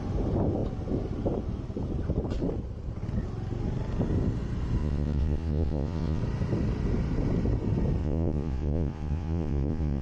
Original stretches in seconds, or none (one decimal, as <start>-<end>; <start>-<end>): 0.0-4.8; 6.2-8.0